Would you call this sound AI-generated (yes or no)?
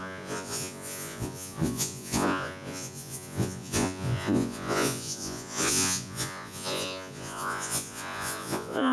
yes